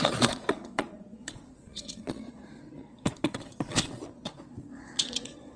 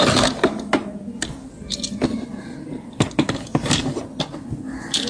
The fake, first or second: first